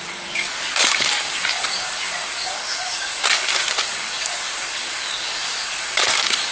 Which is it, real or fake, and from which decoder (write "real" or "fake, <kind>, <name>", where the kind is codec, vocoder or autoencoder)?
fake, codec, DAC